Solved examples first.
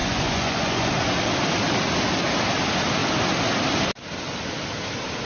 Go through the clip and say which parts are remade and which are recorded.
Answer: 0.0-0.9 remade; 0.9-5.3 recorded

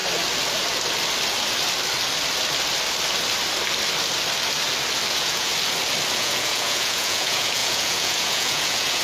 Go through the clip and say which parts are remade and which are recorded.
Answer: 0.0-5.1 recorded; 5.1-5.5 remade; 5.5-6.2 recorded; 6.2-9.0 remade

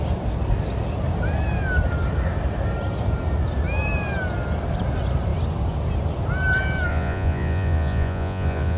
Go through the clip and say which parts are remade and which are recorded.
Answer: 0.0-6.9 recorded; 6.9-8.8 remade

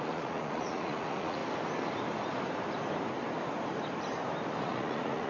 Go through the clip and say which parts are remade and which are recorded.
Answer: 0.0-1.4 remade; 1.4-4.6 recorded; 4.6-5.3 remade

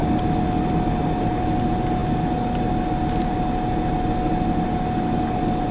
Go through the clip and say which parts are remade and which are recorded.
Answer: 0.0-5.7 recorded

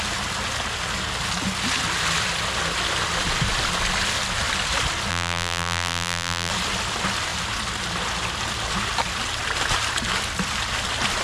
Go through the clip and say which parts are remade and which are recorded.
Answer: 0.0-5.1 recorded; 5.1-6.5 remade; 6.5-11.2 recorded

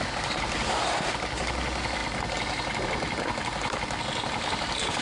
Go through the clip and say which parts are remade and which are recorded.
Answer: 0.0-5.0 recorded

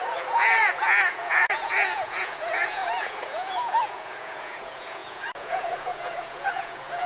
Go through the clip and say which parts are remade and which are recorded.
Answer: 0.0-7.1 remade